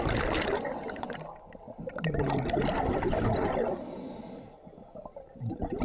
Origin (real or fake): real